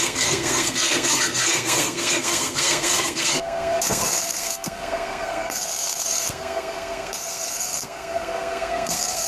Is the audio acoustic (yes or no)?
no